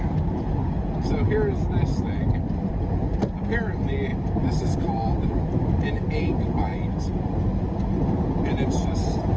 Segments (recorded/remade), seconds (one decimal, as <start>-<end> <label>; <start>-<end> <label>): 0.0-9.4 recorded